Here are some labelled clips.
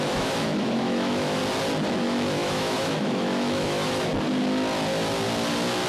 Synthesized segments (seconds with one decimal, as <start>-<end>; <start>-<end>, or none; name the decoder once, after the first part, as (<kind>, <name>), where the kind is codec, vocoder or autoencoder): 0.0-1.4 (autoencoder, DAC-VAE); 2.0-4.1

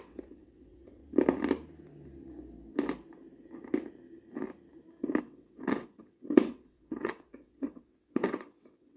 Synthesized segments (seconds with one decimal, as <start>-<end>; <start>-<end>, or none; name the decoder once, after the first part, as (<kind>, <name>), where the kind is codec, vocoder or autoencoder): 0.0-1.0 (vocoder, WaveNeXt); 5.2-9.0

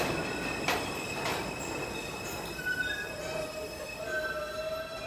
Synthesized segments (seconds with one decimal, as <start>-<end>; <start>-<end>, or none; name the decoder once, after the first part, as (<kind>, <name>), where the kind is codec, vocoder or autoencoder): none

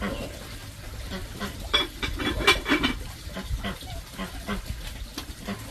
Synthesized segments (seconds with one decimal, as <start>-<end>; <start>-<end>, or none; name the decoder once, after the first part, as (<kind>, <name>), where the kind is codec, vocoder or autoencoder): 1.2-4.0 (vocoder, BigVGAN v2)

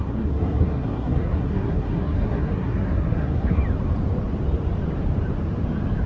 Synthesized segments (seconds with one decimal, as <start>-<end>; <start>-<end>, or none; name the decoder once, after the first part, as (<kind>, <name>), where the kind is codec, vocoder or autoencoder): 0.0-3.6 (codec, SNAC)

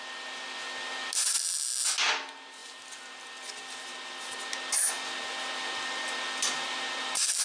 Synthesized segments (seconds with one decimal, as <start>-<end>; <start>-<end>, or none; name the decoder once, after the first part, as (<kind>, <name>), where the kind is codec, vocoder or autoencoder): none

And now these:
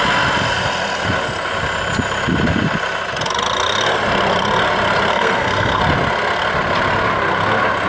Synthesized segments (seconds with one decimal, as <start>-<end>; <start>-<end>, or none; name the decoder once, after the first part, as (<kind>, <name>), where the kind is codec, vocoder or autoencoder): 5.1-5.8 (codec, SNAC)